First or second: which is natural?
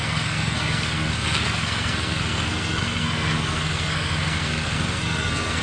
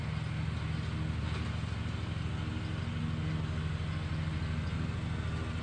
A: second